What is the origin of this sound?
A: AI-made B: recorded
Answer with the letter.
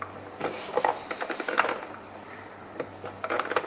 B